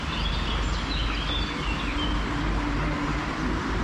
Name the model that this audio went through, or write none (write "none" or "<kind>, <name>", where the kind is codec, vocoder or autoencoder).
none